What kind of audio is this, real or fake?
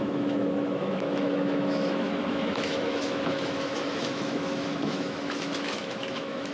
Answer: fake